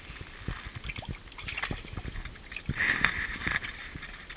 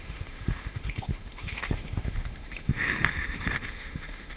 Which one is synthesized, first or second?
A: second